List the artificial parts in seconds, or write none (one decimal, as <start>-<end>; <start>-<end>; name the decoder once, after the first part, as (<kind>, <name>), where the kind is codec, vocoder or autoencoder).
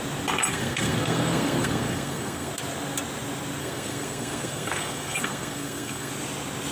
0.5-2.5 (codec, SNAC); 3.6-6.1